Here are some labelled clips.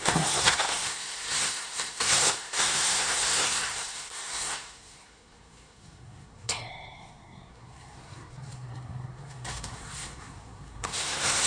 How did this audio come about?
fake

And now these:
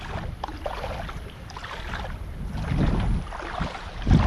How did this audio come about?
real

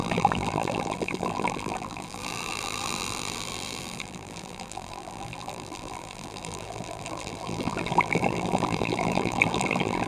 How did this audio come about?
fake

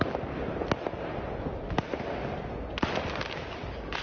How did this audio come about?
real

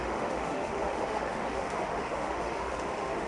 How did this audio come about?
fake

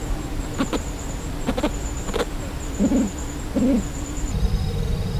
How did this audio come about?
real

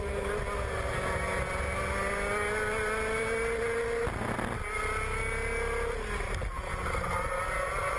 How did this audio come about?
real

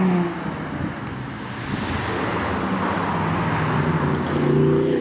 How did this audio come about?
real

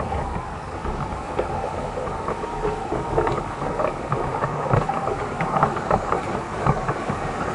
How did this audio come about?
fake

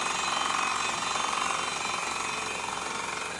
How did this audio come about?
real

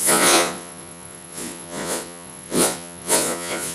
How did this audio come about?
fake